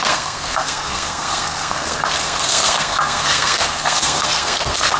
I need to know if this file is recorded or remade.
remade